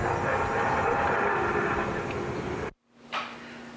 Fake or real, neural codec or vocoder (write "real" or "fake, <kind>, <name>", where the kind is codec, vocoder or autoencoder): real